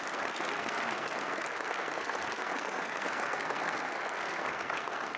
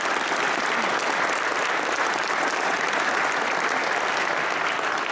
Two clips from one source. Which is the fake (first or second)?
first